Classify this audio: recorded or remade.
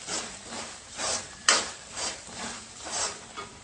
remade